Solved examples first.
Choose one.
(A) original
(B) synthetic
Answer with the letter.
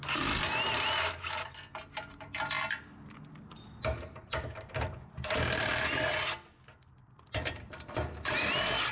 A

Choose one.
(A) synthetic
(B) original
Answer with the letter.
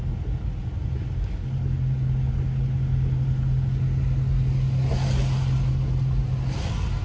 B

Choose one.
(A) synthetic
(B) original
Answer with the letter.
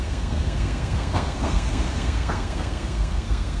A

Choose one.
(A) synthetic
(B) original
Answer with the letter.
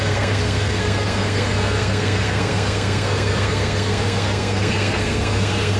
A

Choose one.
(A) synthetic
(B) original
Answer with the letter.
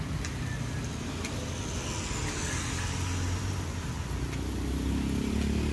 B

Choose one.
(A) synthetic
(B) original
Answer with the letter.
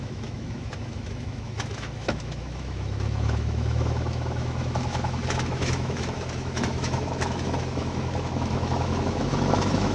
A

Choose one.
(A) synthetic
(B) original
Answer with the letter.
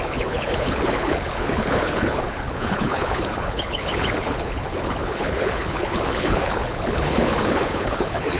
A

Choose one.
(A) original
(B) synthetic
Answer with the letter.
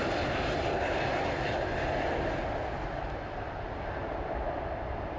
A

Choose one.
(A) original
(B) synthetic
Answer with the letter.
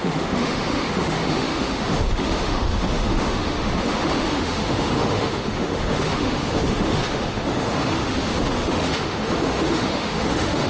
B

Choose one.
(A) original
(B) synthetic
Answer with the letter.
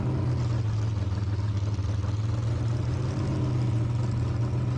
A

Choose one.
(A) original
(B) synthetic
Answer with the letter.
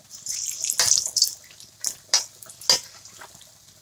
A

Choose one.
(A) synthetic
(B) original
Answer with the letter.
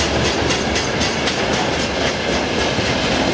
B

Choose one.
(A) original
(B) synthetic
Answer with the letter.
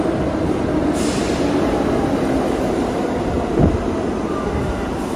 A